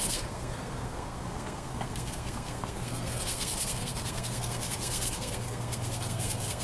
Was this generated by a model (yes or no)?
yes